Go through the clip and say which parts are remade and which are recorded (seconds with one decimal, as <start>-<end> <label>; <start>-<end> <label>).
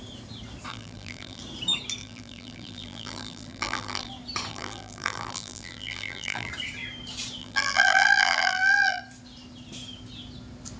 0.0-0.7 recorded; 0.7-1.4 remade; 1.4-2.0 recorded; 2.0-4.1 remade; 4.1-4.5 recorded; 4.5-6.5 remade; 6.5-7.4 recorded; 7.4-9.0 remade; 9.0-10.8 recorded